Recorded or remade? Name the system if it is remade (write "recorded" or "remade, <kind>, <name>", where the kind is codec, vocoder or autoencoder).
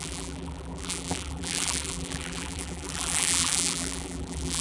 remade, vocoder, BigVGAN v2